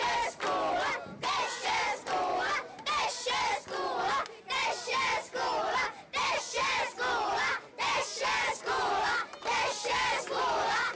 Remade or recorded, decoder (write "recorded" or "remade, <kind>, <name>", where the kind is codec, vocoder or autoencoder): recorded